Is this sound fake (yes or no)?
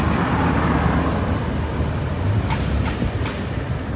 no